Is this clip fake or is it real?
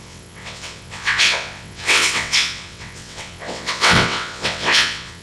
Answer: fake